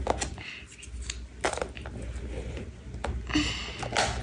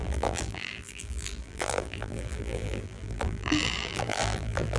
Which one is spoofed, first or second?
second